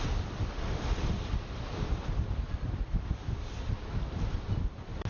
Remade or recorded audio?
recorded